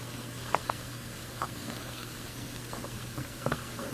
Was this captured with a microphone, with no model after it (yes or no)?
no